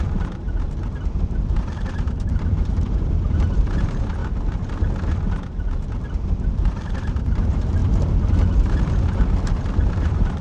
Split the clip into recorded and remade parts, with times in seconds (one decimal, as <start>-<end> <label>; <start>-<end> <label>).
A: 0.0-4.2 remade; 4.2-5.9 recorded; 5.9-7.8 remade; 7.8-9.9 recorded; 9.9-10.4 remade